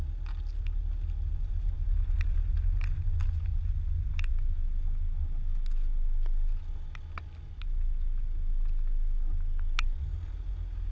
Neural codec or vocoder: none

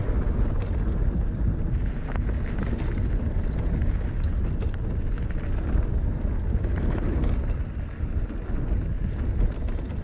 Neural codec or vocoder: none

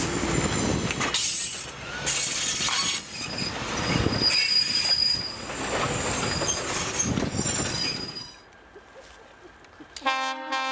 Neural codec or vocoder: none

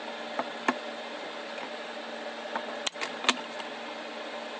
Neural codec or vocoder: none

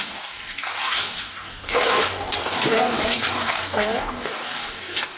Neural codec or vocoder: codec, DAC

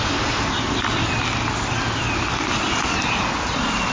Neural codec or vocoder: none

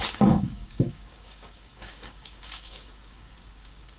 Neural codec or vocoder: codec, DAC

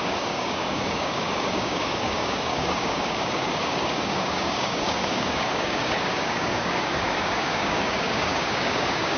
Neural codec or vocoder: codec, DAC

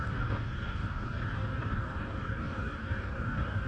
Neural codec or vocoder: codec, DAC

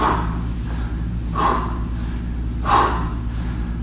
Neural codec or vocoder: none